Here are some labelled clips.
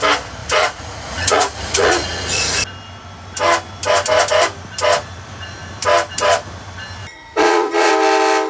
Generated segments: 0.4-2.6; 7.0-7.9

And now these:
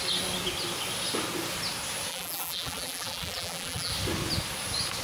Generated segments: 2.1-3.9